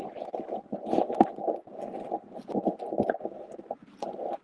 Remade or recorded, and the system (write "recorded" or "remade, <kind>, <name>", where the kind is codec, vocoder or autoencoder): recorded